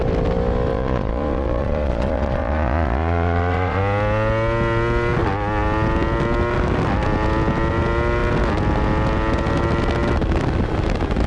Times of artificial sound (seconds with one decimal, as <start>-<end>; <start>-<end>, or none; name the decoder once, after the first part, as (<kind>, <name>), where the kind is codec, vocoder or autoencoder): 0.7-3.8 (vocoder, Vocos)